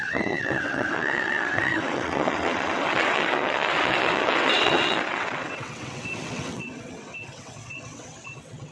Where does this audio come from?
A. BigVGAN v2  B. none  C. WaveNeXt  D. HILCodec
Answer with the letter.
C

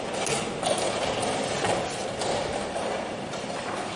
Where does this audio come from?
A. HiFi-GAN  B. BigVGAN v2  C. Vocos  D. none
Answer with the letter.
D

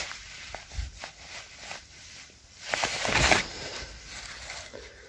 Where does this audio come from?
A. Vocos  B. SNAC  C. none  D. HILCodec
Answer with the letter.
C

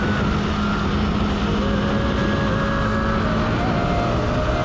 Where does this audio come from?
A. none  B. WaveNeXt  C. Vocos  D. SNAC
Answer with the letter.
A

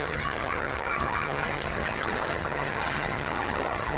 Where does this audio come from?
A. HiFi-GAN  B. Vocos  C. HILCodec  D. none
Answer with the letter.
A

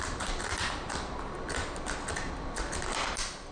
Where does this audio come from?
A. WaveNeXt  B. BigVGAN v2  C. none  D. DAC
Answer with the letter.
C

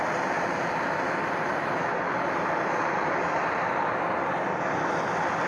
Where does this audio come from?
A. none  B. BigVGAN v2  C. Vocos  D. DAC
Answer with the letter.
A